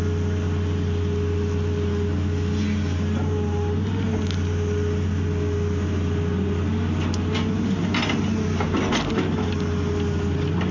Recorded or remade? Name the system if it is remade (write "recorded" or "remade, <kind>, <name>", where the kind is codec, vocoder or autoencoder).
recorded